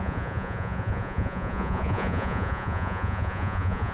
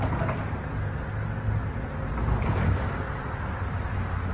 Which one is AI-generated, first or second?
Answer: first